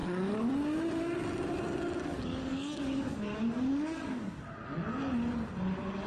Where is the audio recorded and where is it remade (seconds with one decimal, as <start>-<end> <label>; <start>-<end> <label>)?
0.0-0.5 remade; 0.5-2.1 recorded; 2.1-4.4 remade; 4.4-6.1 recorded

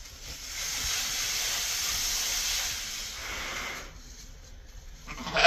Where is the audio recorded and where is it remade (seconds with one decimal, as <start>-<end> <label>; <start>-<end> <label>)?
0.0-5.5 recorded

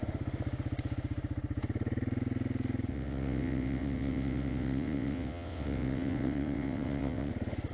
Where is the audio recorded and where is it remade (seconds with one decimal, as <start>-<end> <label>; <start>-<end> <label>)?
0.0-2.9 recorded; 2.9-7.3 remade; 7.3-7.7 recorded